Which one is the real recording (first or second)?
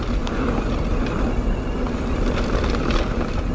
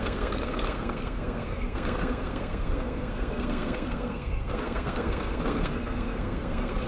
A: first